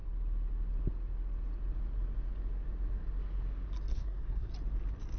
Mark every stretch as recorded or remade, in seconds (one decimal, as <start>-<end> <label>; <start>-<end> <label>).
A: 0.0-3.9 recorded; 3.9-4.5 remade; 4.5-5.2 recorded